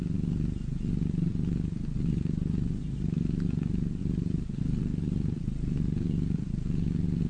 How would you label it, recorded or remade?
recorded